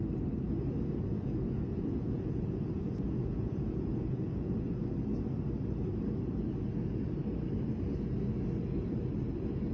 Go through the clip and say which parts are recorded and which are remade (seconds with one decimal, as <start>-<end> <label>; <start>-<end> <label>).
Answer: 0.0-1.1 recorded; 1.1-4.8 remade; 4.8-9.7 recorded

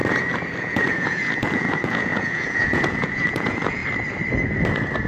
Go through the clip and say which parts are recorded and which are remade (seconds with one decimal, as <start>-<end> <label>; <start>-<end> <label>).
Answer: 0.0-0.6 recorded; 0.6-3.8 remade; 3.8-5.1 recorded